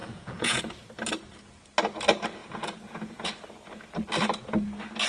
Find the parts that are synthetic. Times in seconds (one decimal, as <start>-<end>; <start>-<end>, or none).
0.0-0.6; 2.4-3.2